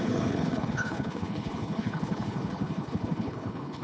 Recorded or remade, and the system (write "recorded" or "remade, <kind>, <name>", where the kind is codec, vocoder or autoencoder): remade, codec, HILCodec